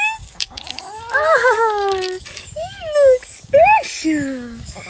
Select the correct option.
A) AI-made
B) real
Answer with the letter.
A